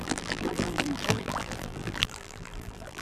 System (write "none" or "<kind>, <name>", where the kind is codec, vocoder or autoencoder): vocoder, BigVGAN v2